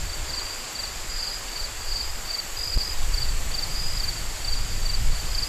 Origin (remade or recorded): recorded